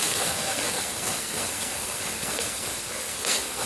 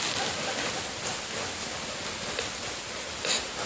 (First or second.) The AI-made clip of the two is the first